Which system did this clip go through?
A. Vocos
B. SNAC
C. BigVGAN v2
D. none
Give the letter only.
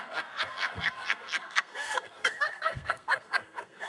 B